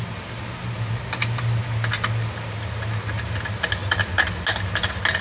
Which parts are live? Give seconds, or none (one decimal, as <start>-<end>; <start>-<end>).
0.0-5.2